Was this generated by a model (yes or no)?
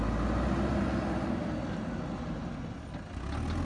no